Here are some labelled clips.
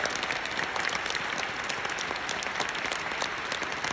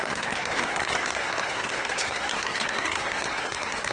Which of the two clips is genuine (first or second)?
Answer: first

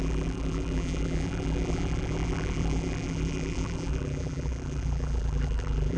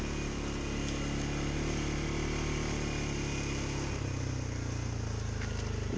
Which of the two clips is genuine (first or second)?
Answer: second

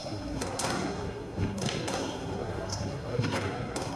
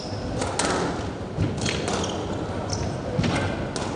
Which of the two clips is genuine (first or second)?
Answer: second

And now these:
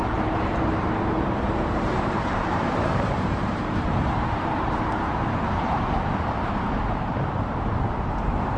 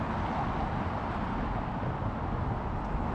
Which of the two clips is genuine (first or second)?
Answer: second